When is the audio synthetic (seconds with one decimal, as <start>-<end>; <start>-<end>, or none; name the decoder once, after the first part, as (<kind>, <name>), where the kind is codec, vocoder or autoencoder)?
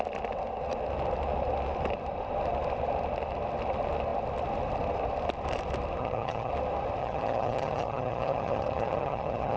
6.0-6.5 (vocoder, HiFi-GAN); 7.0-9.6